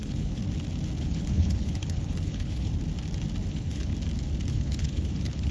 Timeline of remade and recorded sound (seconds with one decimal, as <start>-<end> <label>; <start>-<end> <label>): 0.0-0.4 remade; 0.4-1.0 recorded; 1.0-2.7 remade; 2.7-3.5 recorded; 3.5-3.9 remade; 3.9-4.5 recorded; 4.5-5.5 remade